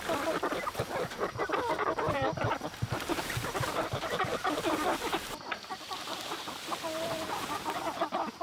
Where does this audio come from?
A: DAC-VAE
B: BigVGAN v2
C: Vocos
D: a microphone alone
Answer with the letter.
B